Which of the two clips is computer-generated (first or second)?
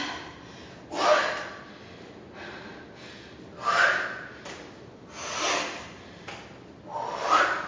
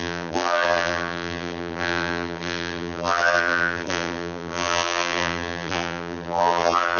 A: second